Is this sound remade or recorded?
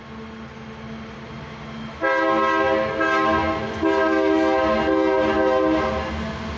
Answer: recorded